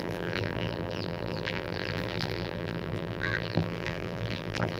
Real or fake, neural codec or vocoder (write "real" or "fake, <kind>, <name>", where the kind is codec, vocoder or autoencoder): fake, vocoder, BigVGAN v2